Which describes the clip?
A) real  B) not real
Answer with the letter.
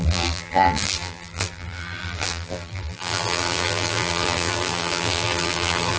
B